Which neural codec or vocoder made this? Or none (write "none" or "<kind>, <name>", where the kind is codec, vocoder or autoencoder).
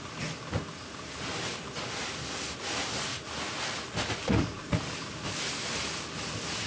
none